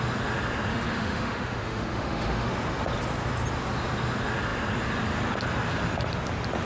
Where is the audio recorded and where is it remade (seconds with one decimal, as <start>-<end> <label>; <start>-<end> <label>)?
0.0-0.7 recorded; 0.7-2.5 remade; 2.5-6.7 recorded